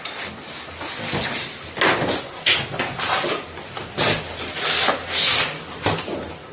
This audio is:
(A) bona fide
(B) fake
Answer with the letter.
A